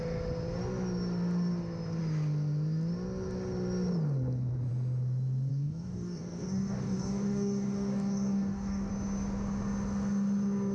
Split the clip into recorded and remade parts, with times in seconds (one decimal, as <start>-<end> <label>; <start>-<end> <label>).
0.0-5.5 recorded; 5.5-8.9 remade; 8.9-10.7 recorded